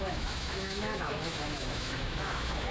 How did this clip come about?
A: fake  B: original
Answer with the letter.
A